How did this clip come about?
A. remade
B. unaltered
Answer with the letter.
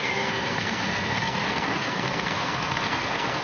A